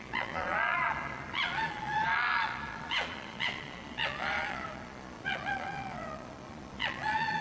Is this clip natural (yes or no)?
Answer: no